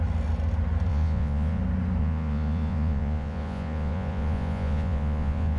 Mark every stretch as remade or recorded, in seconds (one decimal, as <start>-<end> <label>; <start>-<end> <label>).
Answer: 0.0-0.9 recorded; 0.9-1.6 remade; 1.6-2.0 recorded; 2.0-5.6 remade